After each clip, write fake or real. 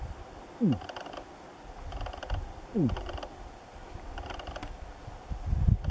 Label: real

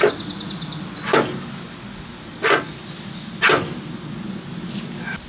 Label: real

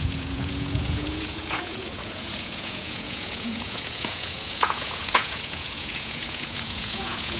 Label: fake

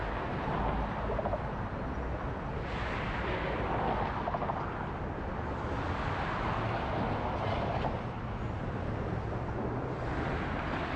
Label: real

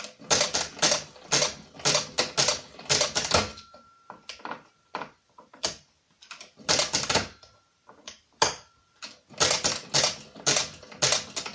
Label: real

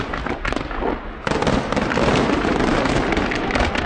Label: real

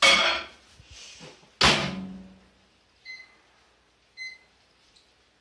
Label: real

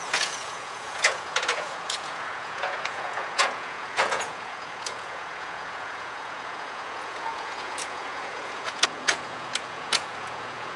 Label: fake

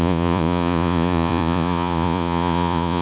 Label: fake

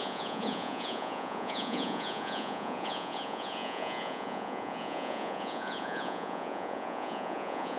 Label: fake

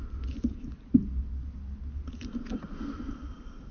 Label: real